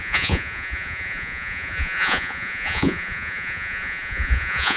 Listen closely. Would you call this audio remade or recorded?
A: remade